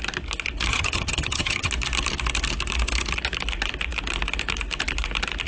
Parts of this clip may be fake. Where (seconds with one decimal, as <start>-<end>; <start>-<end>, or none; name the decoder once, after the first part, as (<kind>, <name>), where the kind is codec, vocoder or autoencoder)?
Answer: 0.7-1.7 (vocoder, HiFi-GAN)